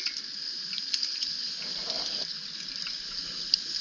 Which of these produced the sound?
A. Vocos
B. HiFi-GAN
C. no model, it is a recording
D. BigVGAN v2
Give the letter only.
C